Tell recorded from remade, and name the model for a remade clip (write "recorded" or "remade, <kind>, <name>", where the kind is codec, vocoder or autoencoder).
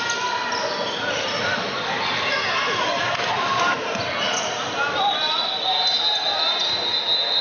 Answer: recorded